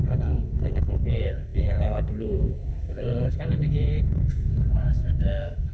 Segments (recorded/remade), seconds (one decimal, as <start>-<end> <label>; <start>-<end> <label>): 0.0-5.7 remade